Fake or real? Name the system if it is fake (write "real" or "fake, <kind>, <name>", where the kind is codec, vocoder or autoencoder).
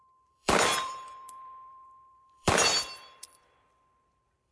fake, vocoder, BigVGAN v2